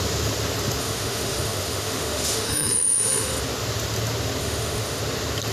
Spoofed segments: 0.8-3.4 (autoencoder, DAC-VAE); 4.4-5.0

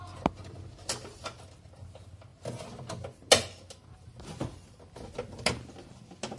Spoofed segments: none

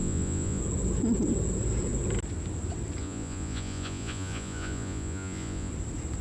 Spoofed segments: 0.0-0.6 (vocoder, Vocos); 3.0-5.7

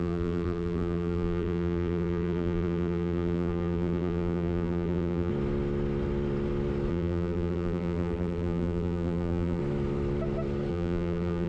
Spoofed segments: 0.0-5.3 (vocoder, BigVGAN v2); 6.9-9.6; 10.7-11.5